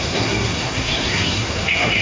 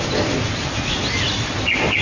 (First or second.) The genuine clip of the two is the second